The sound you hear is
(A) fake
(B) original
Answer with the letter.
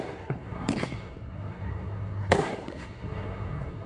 A